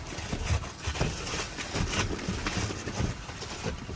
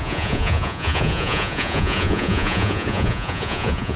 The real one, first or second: first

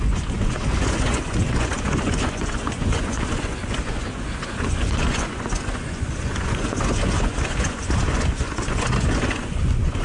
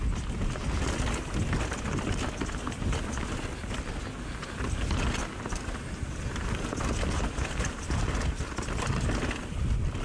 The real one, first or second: second